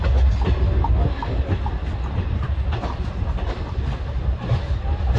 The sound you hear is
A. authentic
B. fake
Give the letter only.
A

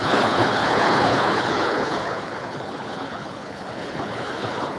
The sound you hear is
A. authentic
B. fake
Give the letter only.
B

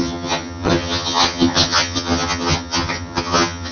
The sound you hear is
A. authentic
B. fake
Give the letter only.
B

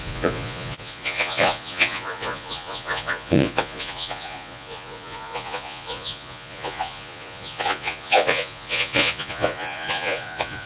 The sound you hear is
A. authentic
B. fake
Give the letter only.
B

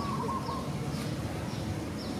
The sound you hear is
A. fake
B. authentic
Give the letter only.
B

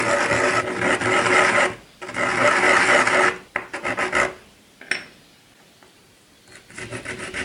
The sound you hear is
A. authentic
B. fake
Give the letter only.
A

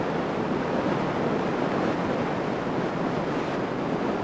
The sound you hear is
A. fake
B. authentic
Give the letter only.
B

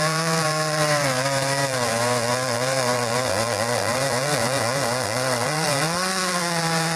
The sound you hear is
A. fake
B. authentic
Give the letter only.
A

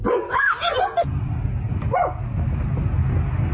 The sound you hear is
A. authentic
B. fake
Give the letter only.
A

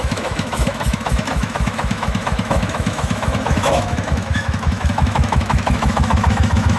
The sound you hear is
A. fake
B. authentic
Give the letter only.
A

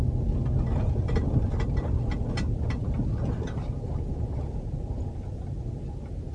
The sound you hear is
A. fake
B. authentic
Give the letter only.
B